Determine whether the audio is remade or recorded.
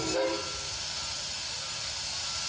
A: recorded